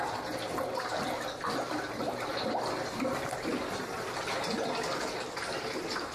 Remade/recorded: remade